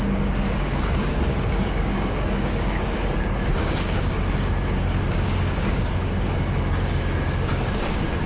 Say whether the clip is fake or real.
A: fake